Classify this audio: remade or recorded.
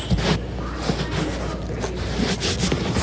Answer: recorded